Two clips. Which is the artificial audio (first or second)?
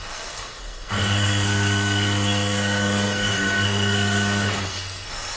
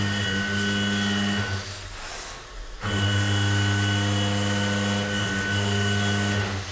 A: first